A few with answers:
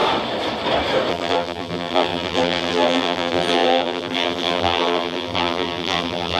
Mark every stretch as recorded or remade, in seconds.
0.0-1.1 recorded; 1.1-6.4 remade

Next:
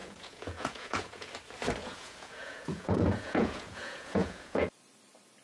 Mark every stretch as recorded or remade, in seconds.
0.0-1.3 remade; 1.3-1.8 recorded; 1.8-4.7 remade; 4.7-5.4 recorded

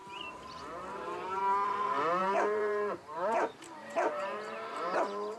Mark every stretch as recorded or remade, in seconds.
0.0-1.4 remade; 1.4-2.2 recorded; 2.2-5.4 remade

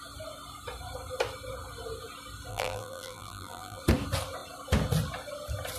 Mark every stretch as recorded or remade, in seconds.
0.0-2.5 recorded; 2.5-3.8 remade; 3.8-5.8 recorded

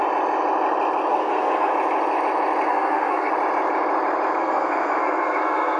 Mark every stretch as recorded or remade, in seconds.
0.0-1.1 recorded; 1.1-1.7 remade; 1.7-2.7 recorded; 2.7-3.3 remade; 3.3-4.4 recorded; 4.4-5.8 remade

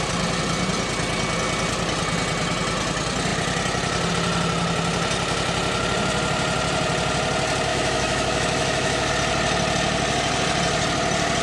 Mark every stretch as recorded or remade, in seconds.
0.0-7.7 recorded; 7.7-9.1 remade; 9.1-11.4 recorded

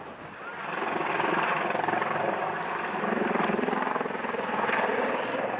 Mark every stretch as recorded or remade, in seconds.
0.0-5.6 recorded